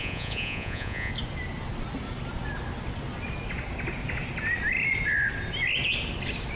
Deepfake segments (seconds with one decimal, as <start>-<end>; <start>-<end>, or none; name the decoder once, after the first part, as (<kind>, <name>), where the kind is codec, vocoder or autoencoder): 0.0-1.1 (vocoder, Vocos)